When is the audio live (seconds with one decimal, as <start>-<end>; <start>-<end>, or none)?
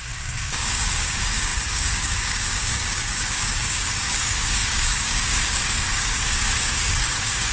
none